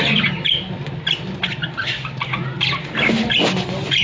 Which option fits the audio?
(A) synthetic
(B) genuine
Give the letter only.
B